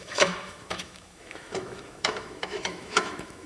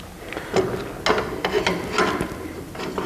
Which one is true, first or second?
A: second